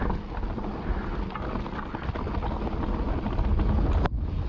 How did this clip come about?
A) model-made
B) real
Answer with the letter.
B